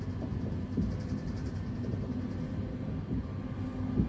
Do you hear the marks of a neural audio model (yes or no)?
no